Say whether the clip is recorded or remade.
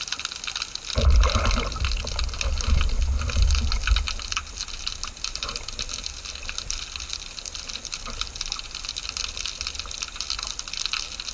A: recorded